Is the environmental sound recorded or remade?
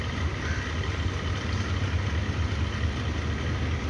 recorded